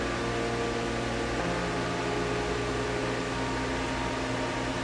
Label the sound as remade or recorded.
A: recorded